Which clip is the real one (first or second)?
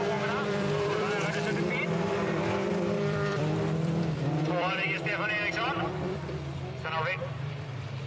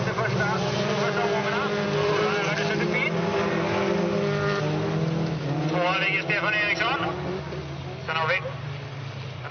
second